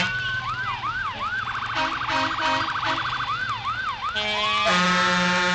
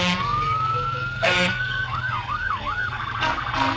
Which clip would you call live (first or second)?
first